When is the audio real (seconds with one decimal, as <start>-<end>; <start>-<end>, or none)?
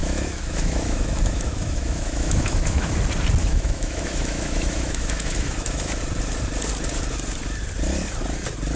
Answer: 3.0-3.4; 6.0-8.8